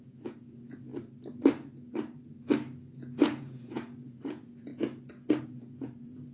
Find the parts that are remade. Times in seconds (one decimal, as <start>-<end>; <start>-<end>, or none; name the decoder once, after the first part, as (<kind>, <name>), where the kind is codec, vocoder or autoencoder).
0.0-0.9 (vocoder, Vocos); 3.2-4.7; 5.4-6.3